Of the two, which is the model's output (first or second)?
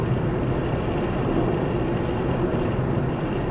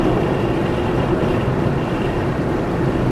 second